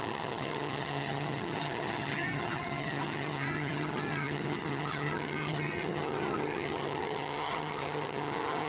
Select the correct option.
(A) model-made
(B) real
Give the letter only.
A